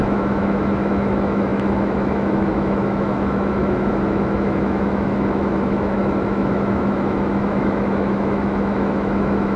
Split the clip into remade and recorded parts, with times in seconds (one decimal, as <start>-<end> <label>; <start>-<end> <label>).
0.0-9.6 remade